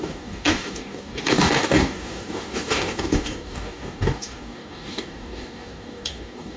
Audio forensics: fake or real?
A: fake